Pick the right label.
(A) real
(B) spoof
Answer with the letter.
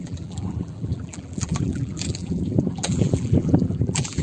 B